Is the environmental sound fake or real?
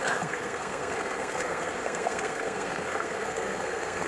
fake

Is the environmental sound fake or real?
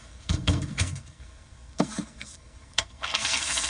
fake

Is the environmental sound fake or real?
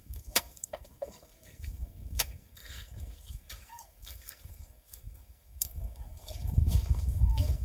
fake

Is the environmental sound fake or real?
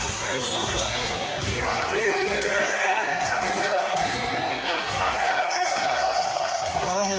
fake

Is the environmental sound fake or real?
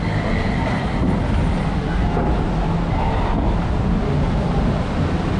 real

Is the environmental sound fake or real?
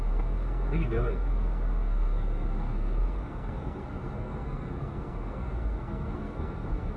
fake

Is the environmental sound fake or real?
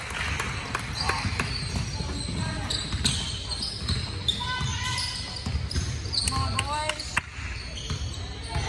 real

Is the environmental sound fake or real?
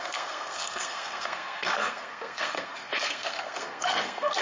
fake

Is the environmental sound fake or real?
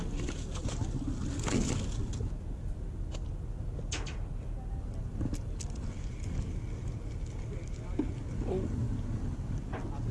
real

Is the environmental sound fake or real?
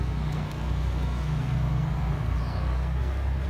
fake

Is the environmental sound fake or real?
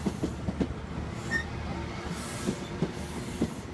real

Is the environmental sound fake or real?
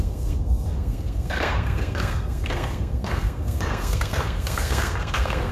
fake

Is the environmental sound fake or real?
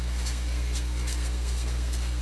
fake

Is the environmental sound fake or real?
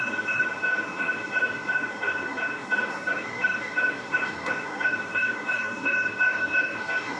fake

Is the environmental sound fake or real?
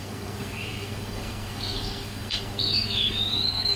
fake